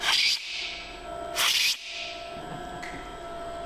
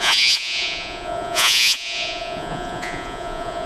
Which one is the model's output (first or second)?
second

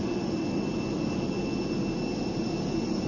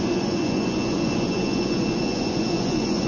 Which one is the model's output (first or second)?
second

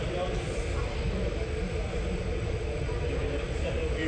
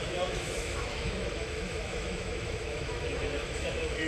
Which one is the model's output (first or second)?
second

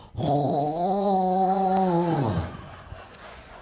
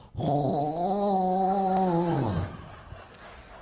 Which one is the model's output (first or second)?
first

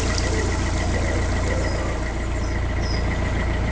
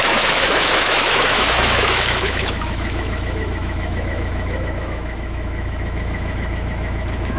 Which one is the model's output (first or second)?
second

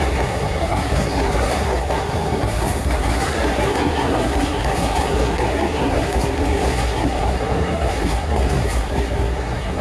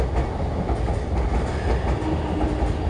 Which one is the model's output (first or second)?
first